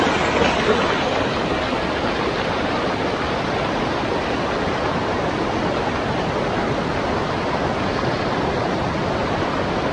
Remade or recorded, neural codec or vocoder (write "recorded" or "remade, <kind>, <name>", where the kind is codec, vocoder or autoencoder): recorded